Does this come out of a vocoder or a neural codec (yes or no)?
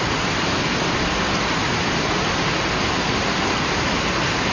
no